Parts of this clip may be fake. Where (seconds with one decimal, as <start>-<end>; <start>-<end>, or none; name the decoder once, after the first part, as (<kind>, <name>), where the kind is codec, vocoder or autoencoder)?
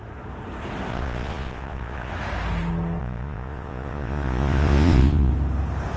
0.9-2.1 (vocoder, Vocos); 3.0-5.3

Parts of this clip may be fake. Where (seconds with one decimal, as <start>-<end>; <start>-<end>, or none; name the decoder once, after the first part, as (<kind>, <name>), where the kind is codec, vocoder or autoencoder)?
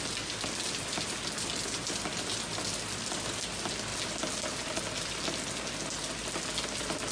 none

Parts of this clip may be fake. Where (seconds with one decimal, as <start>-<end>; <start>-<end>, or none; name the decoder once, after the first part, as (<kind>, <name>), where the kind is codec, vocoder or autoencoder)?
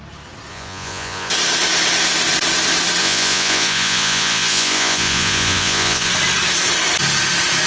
0.5-1.3 (vocoder, Vocos); 3.0-6.1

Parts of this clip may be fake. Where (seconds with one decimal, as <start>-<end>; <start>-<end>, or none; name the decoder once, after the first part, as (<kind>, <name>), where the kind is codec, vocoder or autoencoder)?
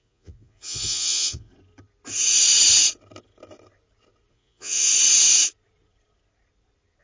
0.0-1.5 (vocoder, Vocos); 4.3-4.9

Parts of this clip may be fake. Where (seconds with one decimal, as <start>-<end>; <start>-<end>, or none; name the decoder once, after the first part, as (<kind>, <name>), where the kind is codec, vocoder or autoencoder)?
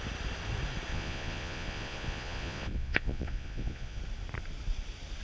0.9-4.0 (vocoder, Vocos)